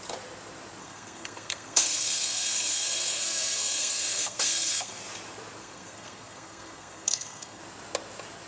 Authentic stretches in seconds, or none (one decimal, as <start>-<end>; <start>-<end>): 0.0-0.8; 5.0-5.6; 7.6-8.5